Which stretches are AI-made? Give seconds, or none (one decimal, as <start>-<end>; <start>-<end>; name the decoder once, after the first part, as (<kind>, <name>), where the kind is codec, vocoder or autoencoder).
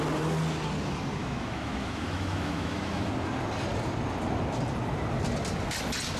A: 1.2-3.1 (autoencoder, DAC-VAE)